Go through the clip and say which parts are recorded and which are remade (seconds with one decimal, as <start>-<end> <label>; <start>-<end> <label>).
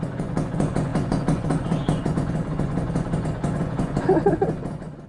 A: 0.0-5.1 remade